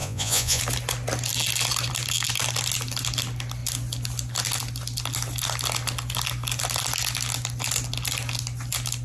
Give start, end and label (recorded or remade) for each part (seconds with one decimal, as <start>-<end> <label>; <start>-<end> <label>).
0.0-0.6 remade; 0.6-9.0 recorded